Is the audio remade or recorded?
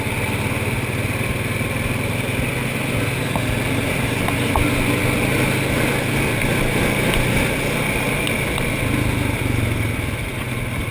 recorded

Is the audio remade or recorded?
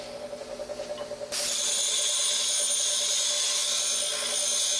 recorded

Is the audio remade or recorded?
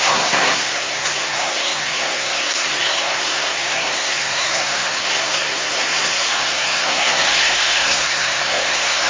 remade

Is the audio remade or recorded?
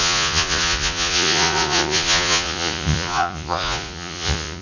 remade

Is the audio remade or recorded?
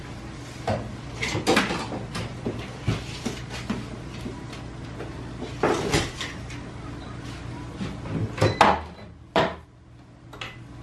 recorded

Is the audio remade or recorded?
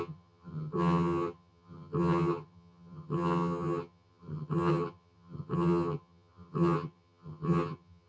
remade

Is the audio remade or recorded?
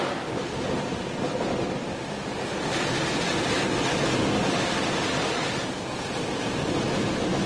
recorded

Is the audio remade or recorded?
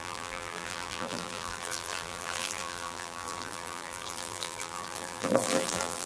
remade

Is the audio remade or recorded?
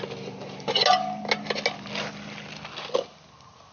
recorded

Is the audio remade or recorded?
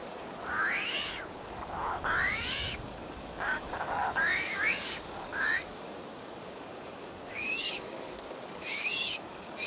remade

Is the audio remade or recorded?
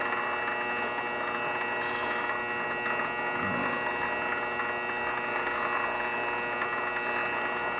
recorded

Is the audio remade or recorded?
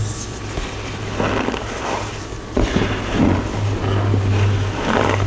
recorded